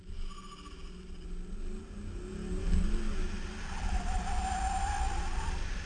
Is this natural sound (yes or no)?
yes